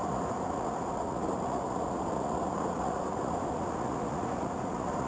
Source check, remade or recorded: remade